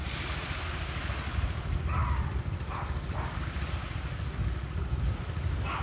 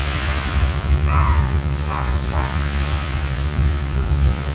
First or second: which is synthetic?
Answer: second